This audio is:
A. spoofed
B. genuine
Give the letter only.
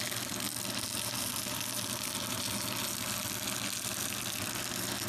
B